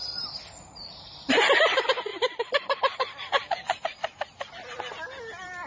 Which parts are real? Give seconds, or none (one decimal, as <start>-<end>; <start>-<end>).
1.3-5.7